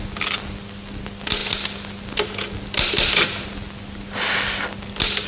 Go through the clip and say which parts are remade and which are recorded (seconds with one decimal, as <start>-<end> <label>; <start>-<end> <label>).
0.0-5.3 recorded